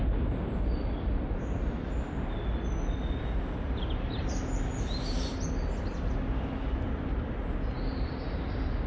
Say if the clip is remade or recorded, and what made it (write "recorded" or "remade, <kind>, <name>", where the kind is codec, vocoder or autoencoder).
recorded